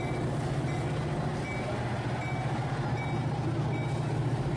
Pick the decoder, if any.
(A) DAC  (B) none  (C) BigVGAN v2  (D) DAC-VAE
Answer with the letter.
B